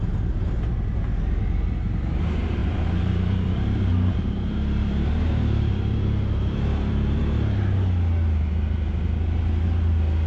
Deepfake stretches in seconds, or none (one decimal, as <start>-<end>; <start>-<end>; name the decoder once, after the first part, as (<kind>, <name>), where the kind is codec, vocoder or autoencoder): 2.6-7.2 (vocoder, BigVGAN v2)